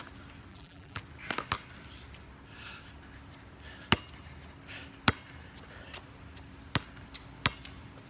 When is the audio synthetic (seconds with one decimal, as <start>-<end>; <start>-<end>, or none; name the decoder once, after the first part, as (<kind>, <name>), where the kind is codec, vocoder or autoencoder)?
0.5-1.0 (vocoder, BigVGAN v2)